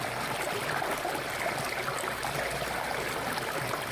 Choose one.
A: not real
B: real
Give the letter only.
B